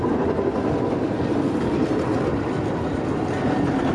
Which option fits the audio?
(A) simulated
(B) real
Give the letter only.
B